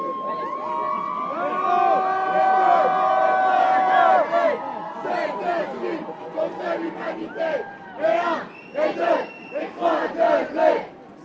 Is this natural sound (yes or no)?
yes